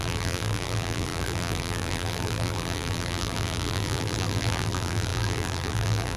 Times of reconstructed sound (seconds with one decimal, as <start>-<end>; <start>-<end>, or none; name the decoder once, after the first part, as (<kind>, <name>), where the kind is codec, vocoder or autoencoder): 0.0-6.2 (vocoder, BigVGAN v2)